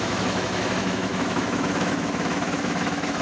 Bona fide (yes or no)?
no